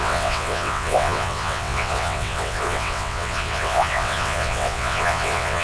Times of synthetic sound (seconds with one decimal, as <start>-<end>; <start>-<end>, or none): 0.0-5.6